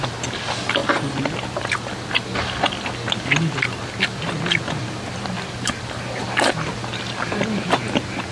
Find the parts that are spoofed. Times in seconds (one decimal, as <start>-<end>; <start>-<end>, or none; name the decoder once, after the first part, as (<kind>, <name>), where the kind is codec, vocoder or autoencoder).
none